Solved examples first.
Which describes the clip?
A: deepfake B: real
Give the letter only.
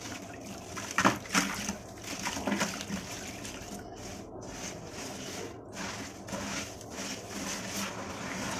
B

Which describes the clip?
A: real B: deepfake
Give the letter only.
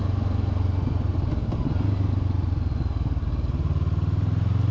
A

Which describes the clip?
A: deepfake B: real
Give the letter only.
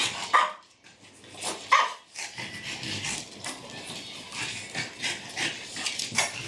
B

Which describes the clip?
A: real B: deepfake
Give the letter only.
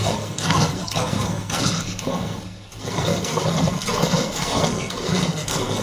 B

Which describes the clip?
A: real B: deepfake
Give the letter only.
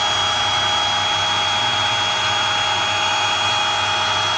A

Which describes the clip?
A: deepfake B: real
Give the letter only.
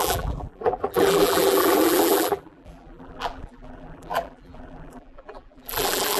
A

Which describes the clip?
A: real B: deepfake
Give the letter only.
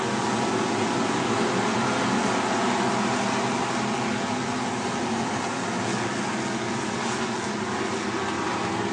A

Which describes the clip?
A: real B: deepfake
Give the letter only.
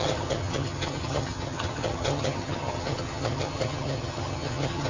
B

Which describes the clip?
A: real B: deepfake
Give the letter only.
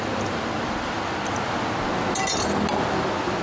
A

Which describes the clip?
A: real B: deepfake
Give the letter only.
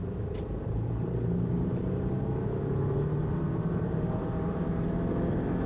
B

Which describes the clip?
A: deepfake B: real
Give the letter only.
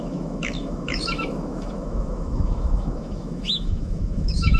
A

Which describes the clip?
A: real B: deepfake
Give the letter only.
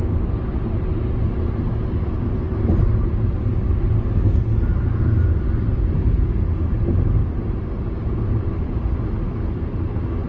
A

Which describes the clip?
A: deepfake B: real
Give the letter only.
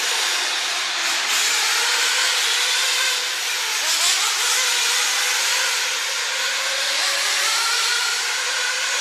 B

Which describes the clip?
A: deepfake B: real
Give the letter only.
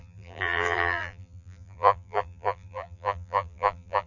A